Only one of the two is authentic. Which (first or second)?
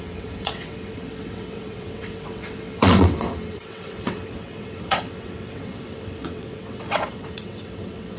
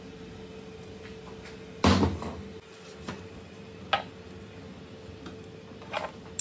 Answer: second